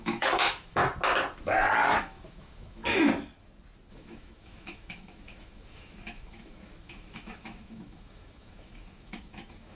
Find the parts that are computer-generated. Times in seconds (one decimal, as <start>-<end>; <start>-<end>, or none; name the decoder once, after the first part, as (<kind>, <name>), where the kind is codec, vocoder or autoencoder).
0.0-0.8 (autoencoder, DAC-VAE); 2.0-3.1; 3.9-9.7